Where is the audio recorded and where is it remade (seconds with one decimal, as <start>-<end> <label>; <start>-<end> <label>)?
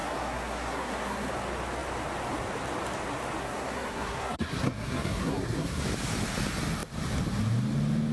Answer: 0.0-1.3 remade; 1.3-3.4 recorded; 3.4-5.8 remade; 5.8-8.1 recorded